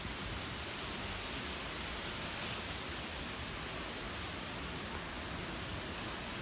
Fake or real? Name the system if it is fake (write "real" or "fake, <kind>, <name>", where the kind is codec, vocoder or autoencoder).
real